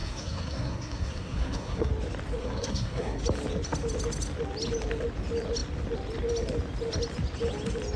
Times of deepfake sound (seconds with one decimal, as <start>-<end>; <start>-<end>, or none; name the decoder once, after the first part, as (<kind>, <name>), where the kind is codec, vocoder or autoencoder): 0.0-1.9 (codec, SNAC); 2.4-3.2

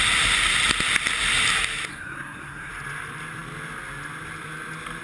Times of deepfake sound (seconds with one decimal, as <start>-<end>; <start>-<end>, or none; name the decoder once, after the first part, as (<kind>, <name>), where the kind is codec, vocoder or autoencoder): 1.9-2.7 (codec, SNAC)

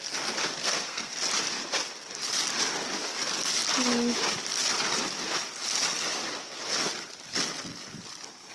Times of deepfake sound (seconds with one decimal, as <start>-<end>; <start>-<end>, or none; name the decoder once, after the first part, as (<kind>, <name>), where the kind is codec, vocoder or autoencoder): 0.6-1.1 (codec, SNAC)